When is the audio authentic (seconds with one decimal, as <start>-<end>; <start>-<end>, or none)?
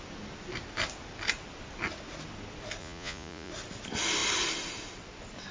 0.0-2.8; 3.5-5.5